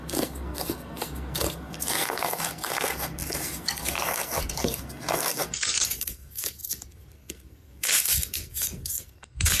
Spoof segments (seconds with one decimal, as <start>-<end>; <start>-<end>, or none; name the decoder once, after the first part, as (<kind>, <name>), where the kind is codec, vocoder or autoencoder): 0.0-9.6 (codec, SNAC)